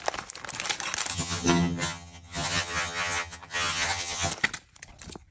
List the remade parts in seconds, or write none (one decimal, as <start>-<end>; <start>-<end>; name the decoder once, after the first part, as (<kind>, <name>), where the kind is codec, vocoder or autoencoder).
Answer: 1.1-4.3 (vocoder, HiFi-GAN)